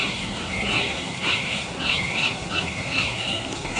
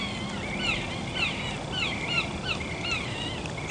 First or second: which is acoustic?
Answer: second